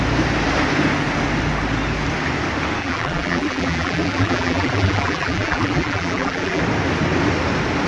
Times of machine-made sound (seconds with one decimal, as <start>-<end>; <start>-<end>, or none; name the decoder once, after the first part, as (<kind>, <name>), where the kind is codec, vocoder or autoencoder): 2.8-6.6 (vocoder, BigVGAN v2)

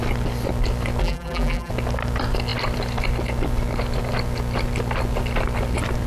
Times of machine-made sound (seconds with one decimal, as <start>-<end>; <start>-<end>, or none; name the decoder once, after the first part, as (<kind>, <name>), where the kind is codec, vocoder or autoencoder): 1.0-1.7 (vocoder, BigVGAN v2)

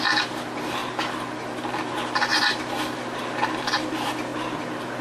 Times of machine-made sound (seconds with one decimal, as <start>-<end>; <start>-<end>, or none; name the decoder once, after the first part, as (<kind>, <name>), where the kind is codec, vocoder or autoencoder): 0.8-1.5 (vocoder, BigVGAN v2); 2.3-3.2

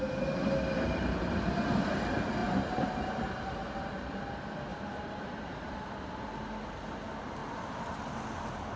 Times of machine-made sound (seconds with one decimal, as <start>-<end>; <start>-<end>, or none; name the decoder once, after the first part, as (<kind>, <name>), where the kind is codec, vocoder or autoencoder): 2.4-3.1 (vocoder, BigVGAN v2); 4.7-6.1; 7.4-8.0

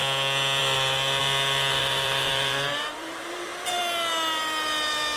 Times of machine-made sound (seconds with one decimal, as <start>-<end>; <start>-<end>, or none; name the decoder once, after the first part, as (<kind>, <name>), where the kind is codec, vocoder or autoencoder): 1.8-3.8 (vocoder, BigVGAN v2)

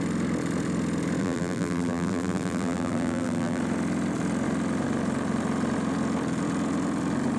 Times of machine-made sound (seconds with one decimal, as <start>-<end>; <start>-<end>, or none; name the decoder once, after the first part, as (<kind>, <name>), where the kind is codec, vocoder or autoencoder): 1.2-3.6 (vocoder, BigVGAN v2)

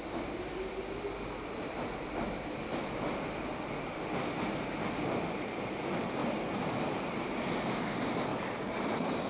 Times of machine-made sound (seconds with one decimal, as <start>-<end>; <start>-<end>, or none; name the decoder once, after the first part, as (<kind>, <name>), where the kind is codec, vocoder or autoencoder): none

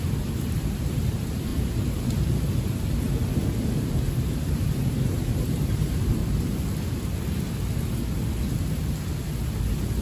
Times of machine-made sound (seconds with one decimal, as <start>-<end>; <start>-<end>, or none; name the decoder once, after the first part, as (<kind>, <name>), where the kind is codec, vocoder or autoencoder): 0.0-6.2 (vocoder, BigVGAN v2)